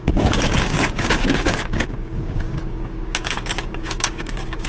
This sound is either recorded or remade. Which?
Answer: remade